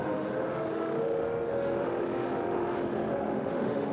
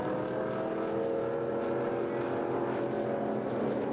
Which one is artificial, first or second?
first